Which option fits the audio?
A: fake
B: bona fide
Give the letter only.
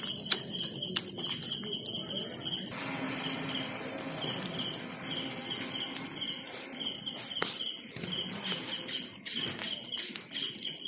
B